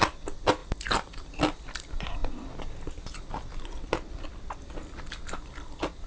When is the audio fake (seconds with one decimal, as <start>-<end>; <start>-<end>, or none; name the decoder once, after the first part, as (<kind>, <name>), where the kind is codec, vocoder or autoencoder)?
none